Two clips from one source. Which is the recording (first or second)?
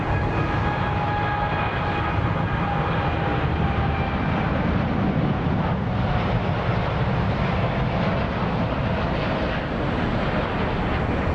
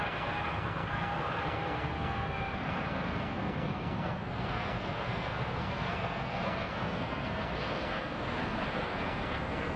first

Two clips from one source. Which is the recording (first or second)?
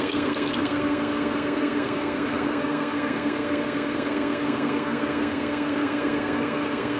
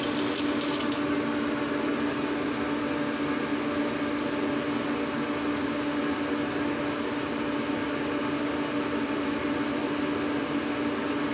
second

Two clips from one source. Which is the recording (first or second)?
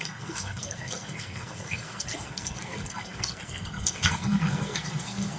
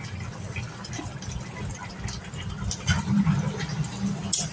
second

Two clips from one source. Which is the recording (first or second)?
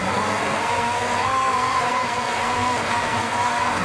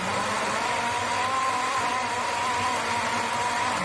second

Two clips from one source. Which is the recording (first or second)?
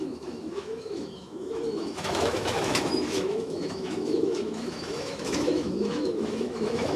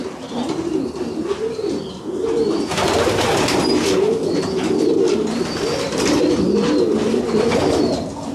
second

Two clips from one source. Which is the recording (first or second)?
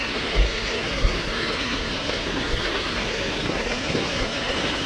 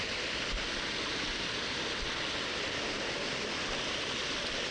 second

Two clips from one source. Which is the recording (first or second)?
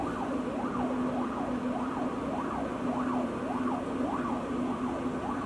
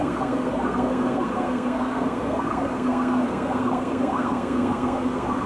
first